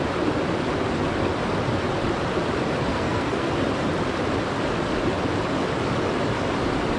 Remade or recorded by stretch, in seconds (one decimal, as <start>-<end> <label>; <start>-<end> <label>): 0.0-2.9 recorded; 2.9-3.5 remade; 3.5-7.0 recorded